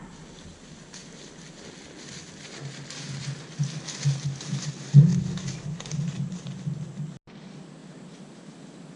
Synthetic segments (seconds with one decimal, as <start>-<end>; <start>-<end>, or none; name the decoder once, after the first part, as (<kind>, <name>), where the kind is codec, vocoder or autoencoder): none